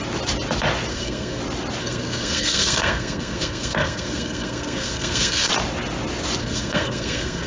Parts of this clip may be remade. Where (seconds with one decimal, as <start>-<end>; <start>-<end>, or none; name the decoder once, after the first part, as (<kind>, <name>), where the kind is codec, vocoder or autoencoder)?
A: 0.9-1.4 (codec, SNAC); 1.8-5.5; 6.4-7.5